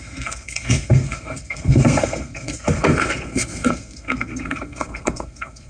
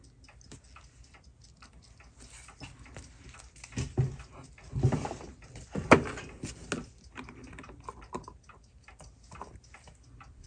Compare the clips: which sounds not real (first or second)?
first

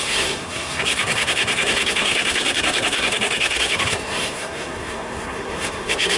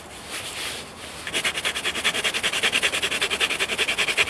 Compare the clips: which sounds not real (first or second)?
first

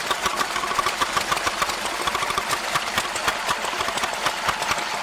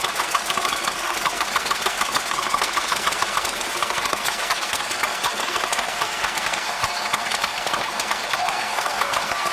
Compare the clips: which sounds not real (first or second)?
second